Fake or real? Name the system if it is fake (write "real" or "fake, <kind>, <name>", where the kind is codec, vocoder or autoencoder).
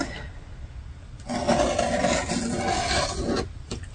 real